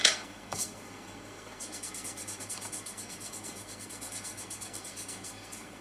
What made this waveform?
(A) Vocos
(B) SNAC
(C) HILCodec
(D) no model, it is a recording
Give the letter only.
B